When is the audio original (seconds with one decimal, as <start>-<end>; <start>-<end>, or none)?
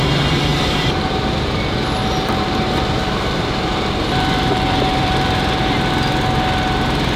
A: 0.0-0.5; 1.5-2.0; 5.9-7.2